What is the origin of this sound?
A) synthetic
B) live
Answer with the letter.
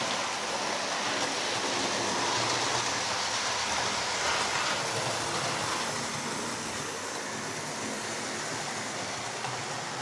B